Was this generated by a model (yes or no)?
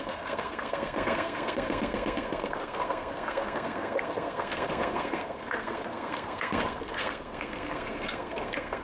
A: yes